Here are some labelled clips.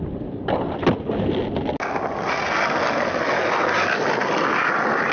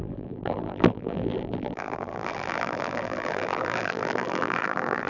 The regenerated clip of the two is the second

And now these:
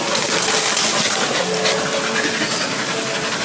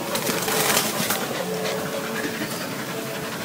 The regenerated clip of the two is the second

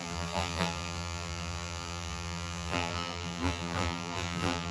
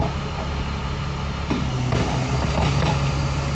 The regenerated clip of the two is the first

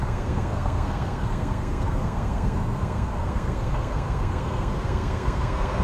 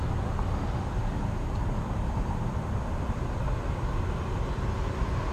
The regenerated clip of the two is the first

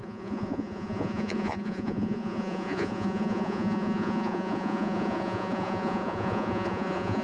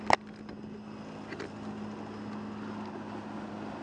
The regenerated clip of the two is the first